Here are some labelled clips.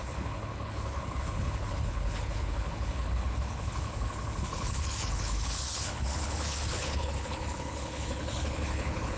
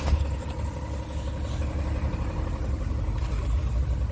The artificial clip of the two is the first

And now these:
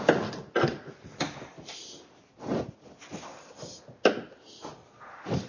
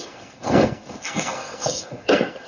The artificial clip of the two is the second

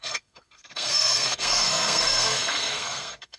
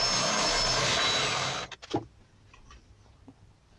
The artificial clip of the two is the first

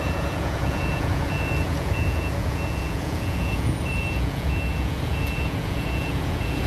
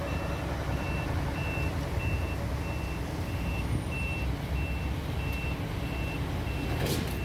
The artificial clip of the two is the first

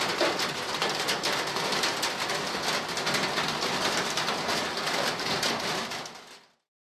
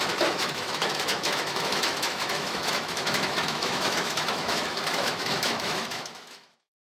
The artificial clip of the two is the second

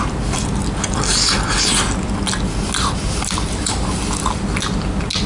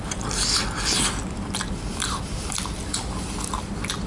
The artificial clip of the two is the second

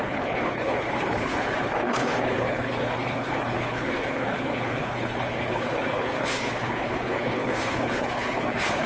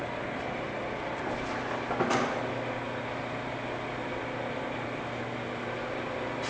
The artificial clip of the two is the first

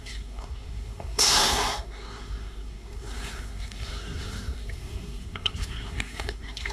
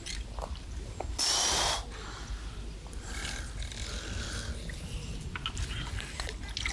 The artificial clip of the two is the first